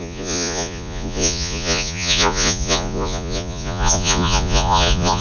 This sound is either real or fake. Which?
fake